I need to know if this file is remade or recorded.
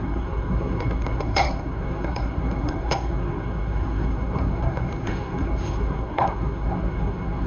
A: remade